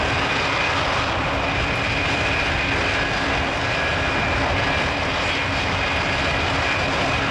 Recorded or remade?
remade